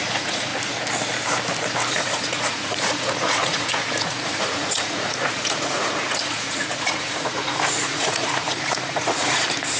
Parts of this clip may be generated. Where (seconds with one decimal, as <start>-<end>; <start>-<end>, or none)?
0.0-0.5; 1.9-9.8